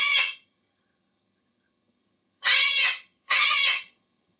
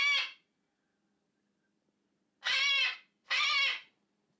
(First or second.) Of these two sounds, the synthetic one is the first